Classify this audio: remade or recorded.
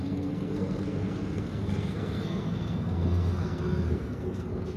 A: remade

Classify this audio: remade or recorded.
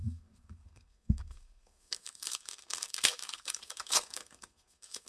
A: remade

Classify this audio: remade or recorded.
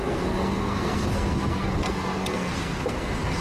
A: remade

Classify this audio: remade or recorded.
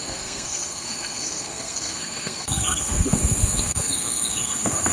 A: remade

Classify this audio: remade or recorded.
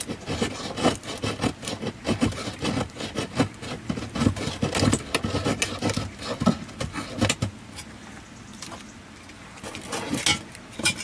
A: recorded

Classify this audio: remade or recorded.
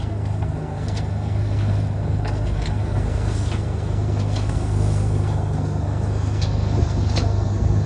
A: remade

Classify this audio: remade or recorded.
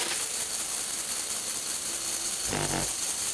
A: recorded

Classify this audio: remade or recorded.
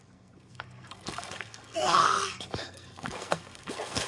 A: remade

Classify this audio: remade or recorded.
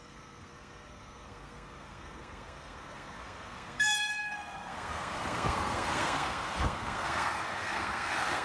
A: remade